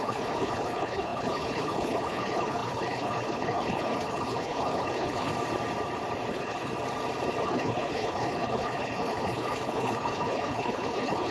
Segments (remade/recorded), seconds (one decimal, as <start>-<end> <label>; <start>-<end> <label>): 0.0-5.3 remade; 5.3-6.3 recorded; 6.3-6.7 remade; 6.7-7.4 recorded; 7.4-11.3 remade